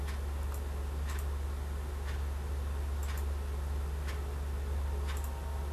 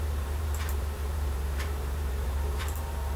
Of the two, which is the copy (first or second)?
second